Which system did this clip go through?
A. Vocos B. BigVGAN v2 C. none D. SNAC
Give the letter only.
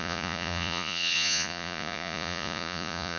A